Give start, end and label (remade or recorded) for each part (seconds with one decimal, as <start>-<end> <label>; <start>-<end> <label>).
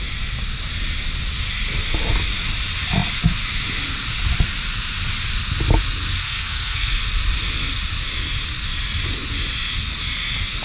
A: 0.0-6.2 recorded; 6.2-6.9 remade; 6.9-10.6 recorded